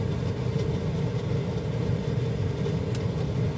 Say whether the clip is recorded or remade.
recorded